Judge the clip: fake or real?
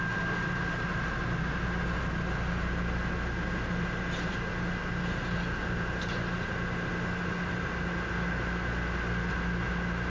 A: real